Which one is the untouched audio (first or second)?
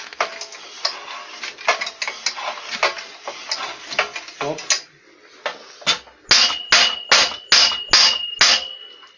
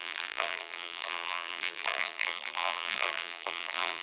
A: first